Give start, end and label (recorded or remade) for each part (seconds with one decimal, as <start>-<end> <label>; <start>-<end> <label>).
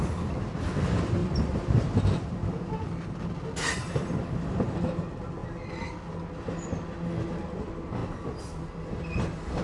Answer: 0.0-1.2 recorded; 1.2-2.0 remade; 2.0-9.6 recorded